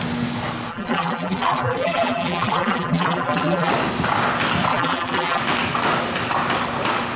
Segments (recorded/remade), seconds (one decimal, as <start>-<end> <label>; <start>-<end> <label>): 0.0-0.7 recorded; 0.7-3.7 remade; 3.7-4.7 recorded; 4.7-5.4 remade; 5.4-7.2 recorded